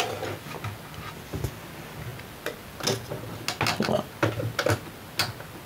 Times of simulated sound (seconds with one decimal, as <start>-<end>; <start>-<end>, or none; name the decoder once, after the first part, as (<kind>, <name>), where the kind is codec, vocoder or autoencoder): none